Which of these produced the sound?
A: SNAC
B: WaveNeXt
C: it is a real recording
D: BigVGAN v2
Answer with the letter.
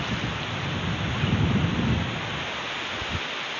C